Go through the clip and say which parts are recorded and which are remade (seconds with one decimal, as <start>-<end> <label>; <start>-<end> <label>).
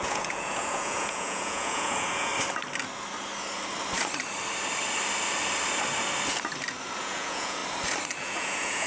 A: 0.0-2.3 remade; 2.3-7.0 recorded; 7.0-7.6 remade; 7.6-8.2 recorded; 8.2-8.9 remade